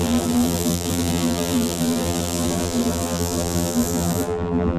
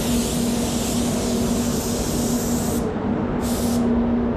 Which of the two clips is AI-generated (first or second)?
first